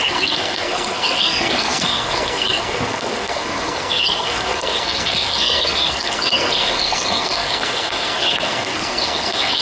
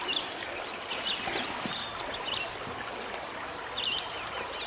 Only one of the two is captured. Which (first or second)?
second